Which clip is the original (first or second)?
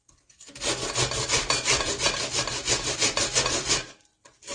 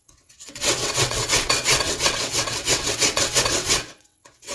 first